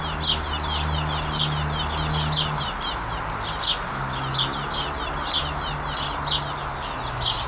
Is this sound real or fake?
real